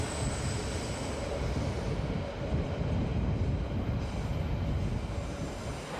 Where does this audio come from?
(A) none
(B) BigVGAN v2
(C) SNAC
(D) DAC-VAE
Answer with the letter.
A